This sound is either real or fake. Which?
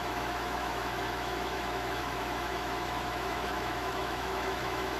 fake